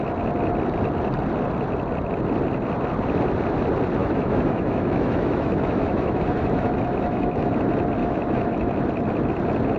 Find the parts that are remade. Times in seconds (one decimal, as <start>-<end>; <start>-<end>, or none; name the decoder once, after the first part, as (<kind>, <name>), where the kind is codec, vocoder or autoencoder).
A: 4.0-7.5 (autoencoder, DAC-VAE); 8.0-8.7